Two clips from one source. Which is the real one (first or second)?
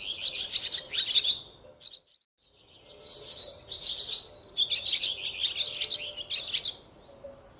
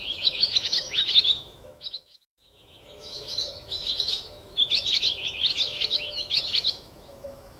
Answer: first